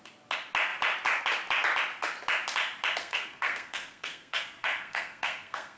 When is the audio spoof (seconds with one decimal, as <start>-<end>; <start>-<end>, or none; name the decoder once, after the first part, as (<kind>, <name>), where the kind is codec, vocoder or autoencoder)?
3.0-5.8 (codec, SNAC)

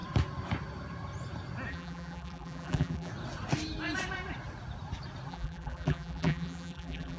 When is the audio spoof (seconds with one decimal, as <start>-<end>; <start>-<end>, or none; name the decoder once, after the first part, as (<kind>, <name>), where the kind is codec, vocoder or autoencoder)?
1.7-3.1 (vocoder, BigVGAN v2); 5.3-7.2

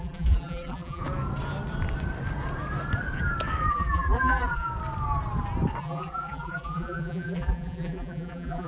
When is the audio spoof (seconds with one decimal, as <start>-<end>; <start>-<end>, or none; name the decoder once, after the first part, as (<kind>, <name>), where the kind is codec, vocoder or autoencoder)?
0.0-1.0 (vocoder, BigVGAN v2); 3.7-4.7; 5.8-8.7

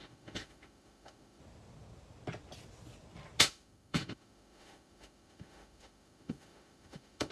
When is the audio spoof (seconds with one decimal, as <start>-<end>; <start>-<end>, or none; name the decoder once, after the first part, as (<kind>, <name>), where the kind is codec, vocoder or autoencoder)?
0.0-1.4 (autoencoder, DAC-VAE); 3.4-7.3